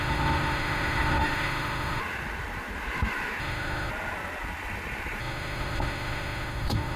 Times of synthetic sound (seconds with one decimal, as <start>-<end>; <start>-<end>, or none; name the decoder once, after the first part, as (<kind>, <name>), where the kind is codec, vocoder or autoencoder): 0.0-2.0 (autoencoder, DAC-VAE); 3.4-3.9; 5.2-7.0

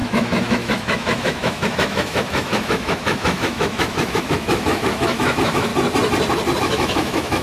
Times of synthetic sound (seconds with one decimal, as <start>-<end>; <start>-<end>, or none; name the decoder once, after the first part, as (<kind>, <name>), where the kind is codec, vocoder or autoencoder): 0.0-5.7 (autoencoder, DAC-VAE); 6.6-7.4